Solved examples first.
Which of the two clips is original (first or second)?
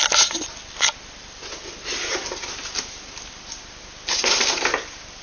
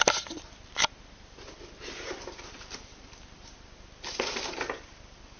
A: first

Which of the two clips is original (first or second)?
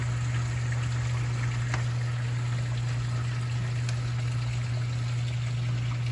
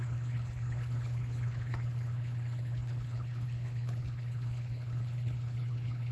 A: first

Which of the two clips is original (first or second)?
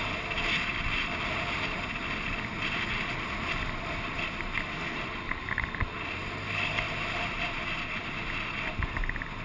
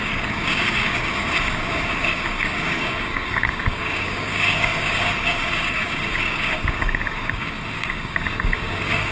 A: first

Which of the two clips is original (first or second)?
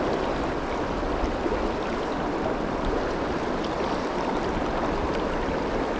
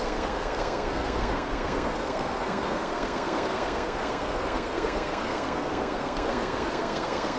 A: first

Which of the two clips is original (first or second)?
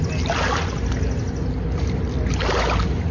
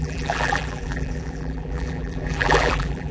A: first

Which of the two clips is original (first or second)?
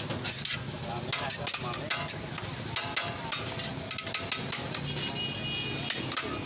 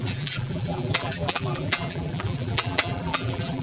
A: first